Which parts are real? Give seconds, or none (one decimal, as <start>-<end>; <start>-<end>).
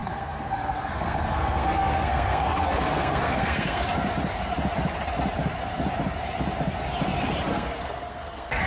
3.8-7.5